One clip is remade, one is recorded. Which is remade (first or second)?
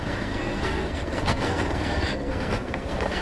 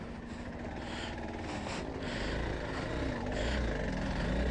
first